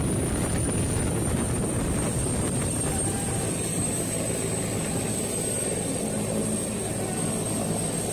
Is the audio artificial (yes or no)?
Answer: no